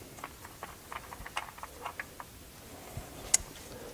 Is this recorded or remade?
recorded